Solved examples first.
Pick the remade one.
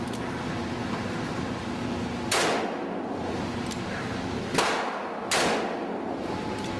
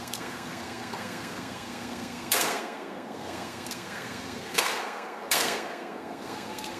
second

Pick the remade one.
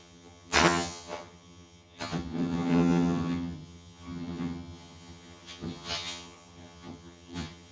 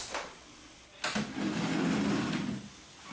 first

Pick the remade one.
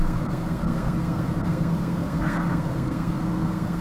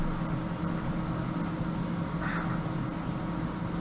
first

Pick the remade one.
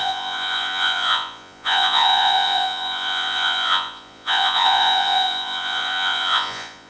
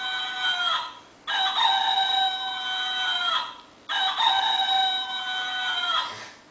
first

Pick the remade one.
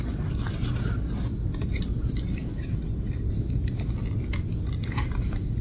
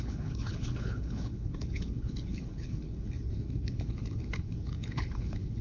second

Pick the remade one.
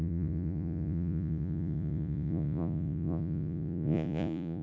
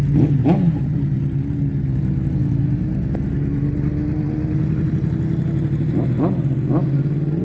first